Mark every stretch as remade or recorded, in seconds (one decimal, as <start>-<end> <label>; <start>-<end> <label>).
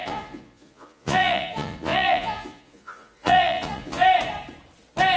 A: 0.0-4.0 remade; 4.0-5.2 recorded